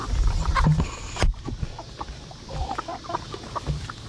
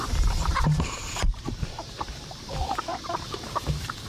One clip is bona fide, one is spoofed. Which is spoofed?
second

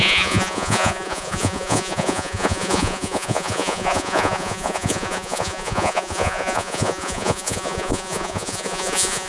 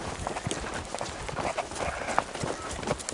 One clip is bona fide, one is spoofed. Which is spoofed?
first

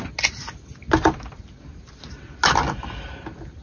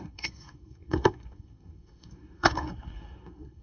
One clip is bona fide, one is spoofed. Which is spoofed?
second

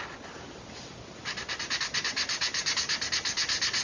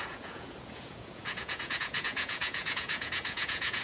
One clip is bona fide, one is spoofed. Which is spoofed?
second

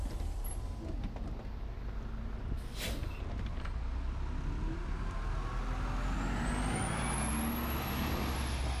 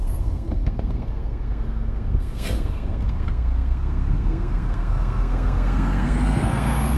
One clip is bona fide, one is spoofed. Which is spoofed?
second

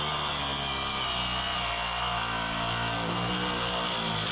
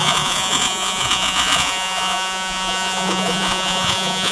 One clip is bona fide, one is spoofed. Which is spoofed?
second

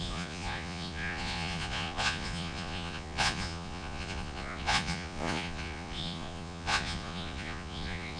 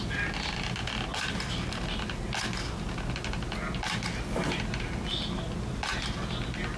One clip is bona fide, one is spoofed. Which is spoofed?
first